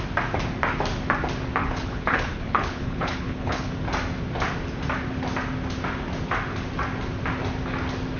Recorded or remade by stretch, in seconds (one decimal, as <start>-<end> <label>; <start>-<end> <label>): 0.0-1.6 recorded; 1.6-3.7 remade; 3.7-8.2 recorded